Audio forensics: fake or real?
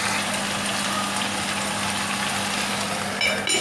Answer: real